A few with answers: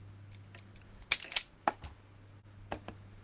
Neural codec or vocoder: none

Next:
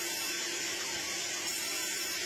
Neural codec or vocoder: none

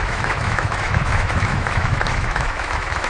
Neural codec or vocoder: autoencoder, DAC-VAE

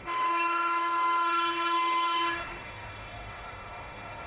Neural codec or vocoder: autoencoder, DAC-VAE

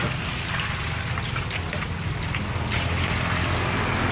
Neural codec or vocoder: none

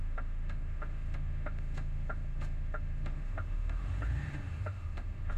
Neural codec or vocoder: autoencoder, DAC-VAE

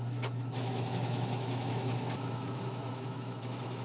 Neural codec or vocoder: autoencoder, DAC-VAE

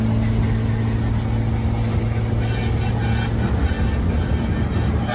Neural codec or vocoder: none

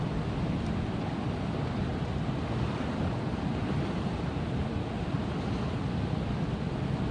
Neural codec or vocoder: none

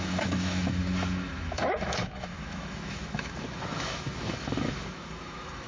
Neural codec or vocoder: autoencoder, DAC-VAE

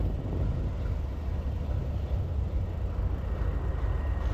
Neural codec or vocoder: none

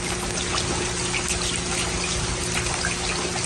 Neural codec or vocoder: none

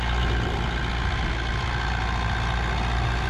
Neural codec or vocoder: none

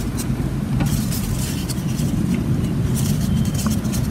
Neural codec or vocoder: none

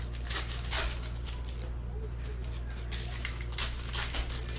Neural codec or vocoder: none